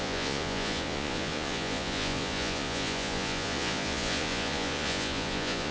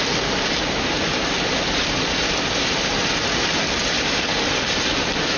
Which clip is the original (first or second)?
second